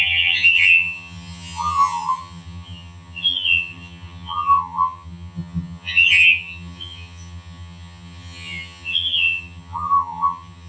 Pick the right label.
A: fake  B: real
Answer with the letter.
A